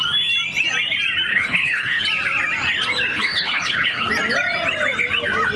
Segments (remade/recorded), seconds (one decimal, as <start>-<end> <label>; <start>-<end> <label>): 0.0-1.3 recorded; 1.3-2.0 remade; 2.0-3.1 recorded; 3.1-4.1 remade; 4.1-5.6 recorded